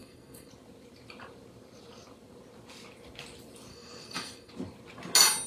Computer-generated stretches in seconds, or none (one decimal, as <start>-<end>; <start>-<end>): 0.0-0.5; 3.7-4.5